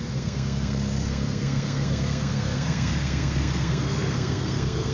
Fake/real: fake